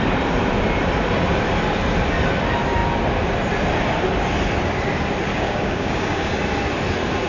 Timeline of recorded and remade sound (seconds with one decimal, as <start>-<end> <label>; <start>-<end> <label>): 0.0-5.3 recorded; 5.3-6.3 remade; 6.3-7.3 recorded